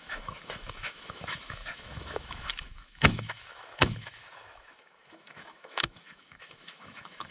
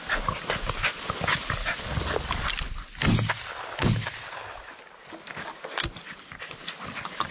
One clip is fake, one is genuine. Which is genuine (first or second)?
second